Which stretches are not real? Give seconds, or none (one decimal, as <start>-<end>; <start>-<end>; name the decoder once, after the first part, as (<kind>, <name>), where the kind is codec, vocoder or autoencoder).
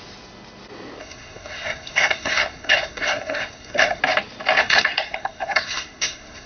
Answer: 1.0-4.0 (codec, SNAC); 4.6-6.5